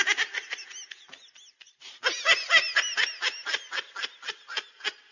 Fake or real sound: real